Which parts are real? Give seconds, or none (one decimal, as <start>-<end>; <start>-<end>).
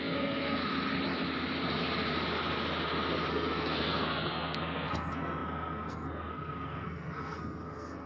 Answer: 0.6-3.3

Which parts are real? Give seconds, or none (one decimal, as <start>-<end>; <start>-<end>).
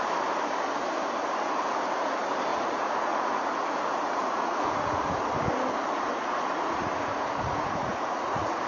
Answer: 0.0-2.5; 5.2-6.1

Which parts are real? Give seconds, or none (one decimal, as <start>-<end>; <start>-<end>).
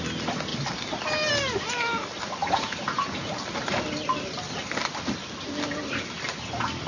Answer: 0.0-2.4; 3.3-6.9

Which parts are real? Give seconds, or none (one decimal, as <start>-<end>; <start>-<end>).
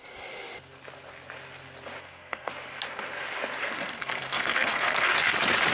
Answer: 0.0-2.0; 2.5-3.6; 5.1-5.7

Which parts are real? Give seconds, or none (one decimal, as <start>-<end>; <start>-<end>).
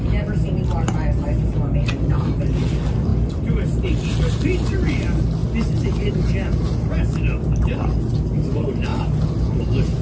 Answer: 0.0-3.1; 4.2-10.0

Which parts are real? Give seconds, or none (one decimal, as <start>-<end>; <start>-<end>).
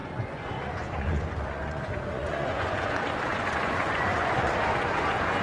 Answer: none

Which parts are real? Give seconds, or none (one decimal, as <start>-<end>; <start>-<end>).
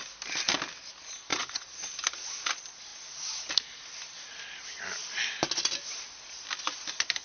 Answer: 0.0-1.3; 1.9-7.2